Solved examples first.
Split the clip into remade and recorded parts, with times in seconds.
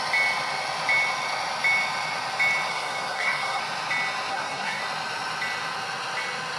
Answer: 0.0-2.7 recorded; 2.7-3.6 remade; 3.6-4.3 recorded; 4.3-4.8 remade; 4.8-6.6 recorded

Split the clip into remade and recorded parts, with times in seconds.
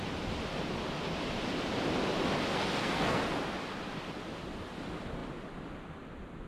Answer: 0.0-2.5 recorded; 2.5-3.2 remade; 3.2-6.5 recorded